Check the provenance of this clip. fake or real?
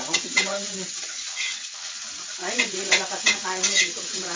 fake